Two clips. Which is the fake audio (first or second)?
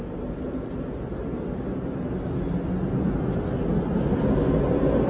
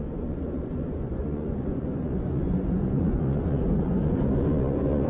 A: second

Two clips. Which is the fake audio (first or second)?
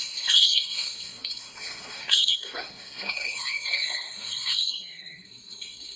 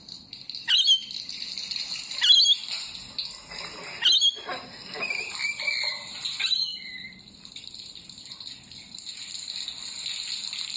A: first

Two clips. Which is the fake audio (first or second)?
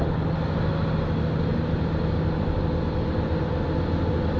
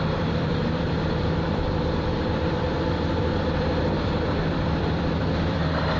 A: second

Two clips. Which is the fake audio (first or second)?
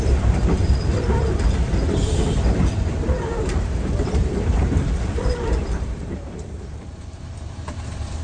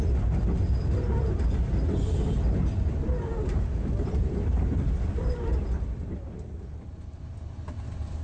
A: first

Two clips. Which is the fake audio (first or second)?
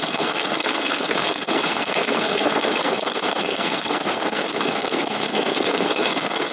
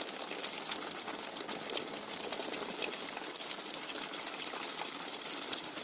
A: first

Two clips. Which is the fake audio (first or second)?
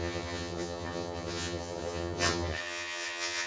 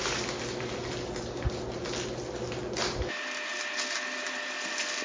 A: first